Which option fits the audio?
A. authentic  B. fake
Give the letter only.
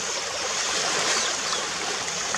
A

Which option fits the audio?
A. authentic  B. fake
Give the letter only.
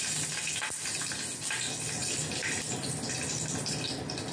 A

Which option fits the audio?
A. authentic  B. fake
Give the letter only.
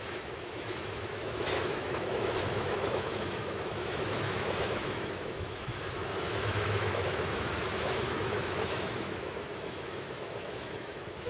B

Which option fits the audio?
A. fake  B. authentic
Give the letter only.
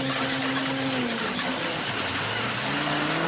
B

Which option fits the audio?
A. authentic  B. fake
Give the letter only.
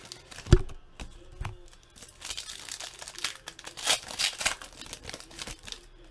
A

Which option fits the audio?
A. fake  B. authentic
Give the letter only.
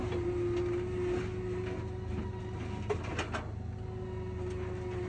B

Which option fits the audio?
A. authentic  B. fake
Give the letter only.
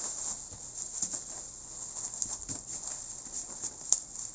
A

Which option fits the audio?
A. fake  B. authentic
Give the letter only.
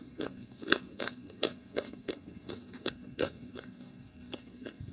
A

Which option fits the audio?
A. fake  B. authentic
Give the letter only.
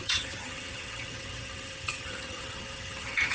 A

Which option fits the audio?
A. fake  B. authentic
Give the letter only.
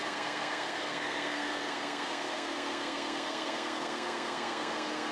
A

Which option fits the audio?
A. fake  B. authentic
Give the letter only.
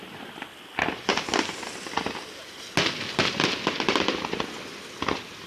B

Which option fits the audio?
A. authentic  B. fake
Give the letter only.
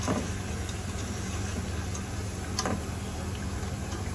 B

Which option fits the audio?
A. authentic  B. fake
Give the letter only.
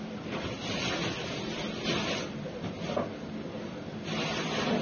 A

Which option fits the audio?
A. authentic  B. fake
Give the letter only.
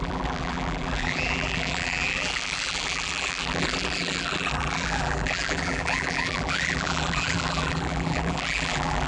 B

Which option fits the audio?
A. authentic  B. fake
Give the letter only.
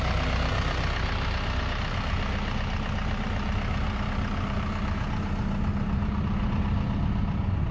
A